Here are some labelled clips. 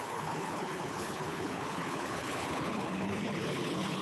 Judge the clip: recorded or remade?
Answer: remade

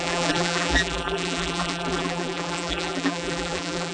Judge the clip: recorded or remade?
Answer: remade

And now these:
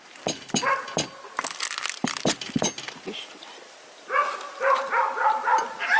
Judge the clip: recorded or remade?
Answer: recorded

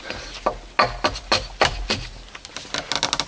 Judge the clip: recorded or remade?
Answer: recorded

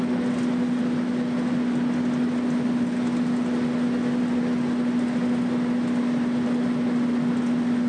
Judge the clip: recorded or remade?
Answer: recorded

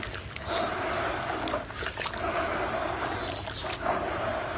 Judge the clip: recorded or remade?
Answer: recorded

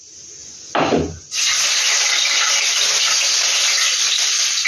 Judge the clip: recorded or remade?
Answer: recorded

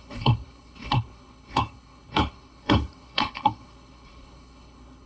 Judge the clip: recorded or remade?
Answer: remade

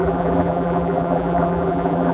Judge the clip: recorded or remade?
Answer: remade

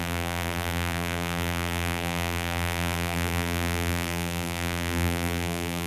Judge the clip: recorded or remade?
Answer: remade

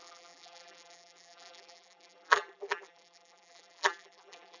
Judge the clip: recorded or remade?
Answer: remade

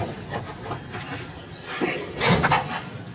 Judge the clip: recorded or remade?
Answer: recorded